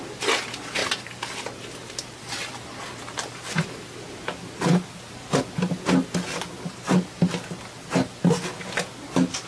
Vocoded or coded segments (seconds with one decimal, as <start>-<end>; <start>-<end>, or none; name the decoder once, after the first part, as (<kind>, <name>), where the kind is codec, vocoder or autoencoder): none